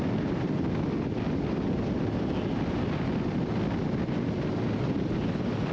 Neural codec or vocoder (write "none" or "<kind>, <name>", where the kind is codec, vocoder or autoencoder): none